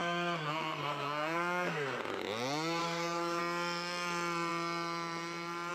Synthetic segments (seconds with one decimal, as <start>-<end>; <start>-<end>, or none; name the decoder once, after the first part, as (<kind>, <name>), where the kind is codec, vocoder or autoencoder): 0.0-2.0 (codec, SNAC); 2.8-3.4